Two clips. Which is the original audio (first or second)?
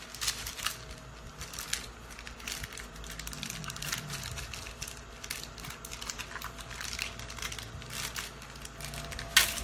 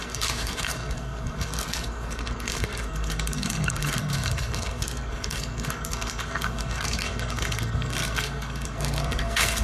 first